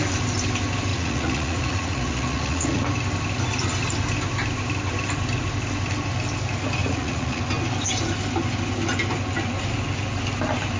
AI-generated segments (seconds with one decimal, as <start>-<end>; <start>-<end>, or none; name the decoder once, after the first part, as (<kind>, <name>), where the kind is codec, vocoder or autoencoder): 0.9-2.8 (vocoder, Vocos); 6.8-7.4